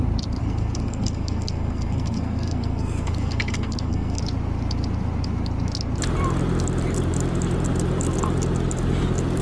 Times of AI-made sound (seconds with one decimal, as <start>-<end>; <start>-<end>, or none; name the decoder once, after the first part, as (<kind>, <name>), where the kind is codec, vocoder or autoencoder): 0.4-4.2 (codec, SNAC)